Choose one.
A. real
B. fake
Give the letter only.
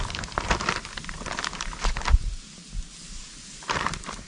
A